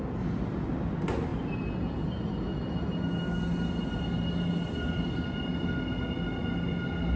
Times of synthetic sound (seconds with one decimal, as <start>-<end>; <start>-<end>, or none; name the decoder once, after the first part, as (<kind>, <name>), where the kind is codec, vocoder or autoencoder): none

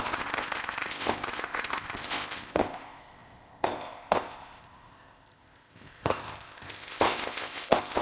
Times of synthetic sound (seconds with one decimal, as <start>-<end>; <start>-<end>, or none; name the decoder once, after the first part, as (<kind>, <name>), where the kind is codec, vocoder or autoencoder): 0.0-8.0 (codec, ZipCodec)

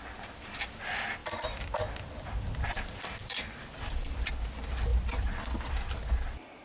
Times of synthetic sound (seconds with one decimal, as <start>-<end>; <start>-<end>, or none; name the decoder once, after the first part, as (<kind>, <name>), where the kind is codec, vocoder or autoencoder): 1.2-2.5 (vocoder, BigVGAN v2); 3.2-4.3; 4.9-6.1

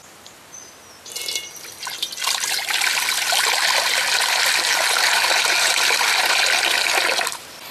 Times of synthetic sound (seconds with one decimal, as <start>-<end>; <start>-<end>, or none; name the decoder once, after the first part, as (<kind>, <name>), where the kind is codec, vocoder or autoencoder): 4.7-5.8 (vocoder, BigVGAN v2)

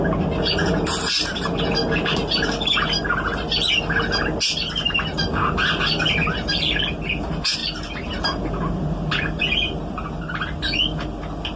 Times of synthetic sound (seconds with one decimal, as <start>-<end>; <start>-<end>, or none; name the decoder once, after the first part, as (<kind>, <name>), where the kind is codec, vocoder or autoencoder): none

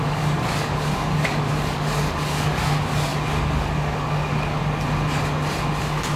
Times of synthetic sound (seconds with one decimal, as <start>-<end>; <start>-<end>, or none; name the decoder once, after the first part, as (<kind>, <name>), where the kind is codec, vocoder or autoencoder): 0.0-4.6 (codec, DAC); 5.8-6.2